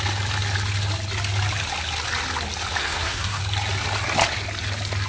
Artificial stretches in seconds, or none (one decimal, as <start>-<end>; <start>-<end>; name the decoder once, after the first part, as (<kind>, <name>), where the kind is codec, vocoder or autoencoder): 2.8-3.4 (codec, SNAC)